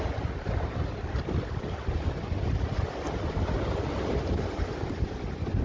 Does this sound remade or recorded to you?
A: recorded